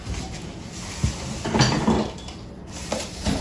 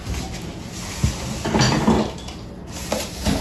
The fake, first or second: first